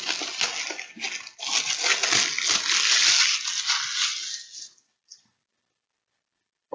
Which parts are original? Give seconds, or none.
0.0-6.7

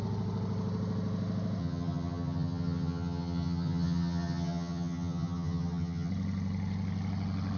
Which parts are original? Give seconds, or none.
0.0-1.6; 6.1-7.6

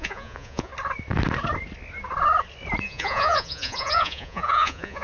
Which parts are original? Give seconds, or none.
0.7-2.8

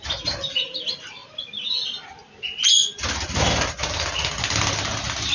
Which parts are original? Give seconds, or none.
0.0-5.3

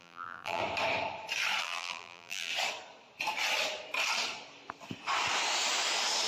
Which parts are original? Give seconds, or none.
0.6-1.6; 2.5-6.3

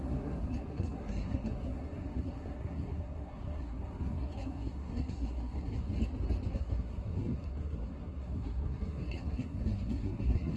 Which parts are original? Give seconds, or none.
5.9-6.5

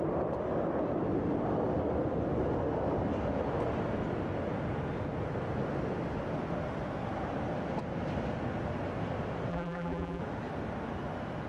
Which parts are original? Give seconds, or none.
0.0-9.5; 10.2-11.5